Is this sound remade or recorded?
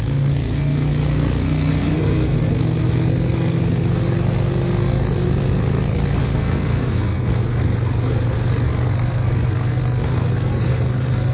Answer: remade